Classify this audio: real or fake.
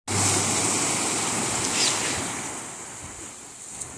real